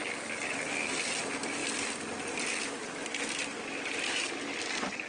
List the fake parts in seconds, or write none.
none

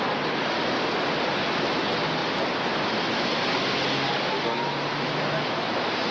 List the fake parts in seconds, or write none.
none

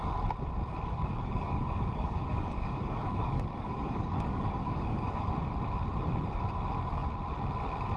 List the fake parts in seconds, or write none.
0.9-5.3 (codec, DAC)

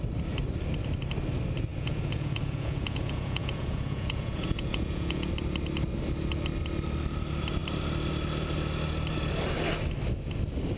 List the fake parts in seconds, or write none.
1.7-5.3 (vocoder, Vocos)

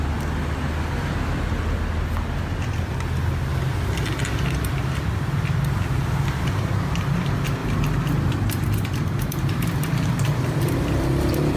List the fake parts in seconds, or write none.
7.6-11.6 (vocoder, BigVGAN v2)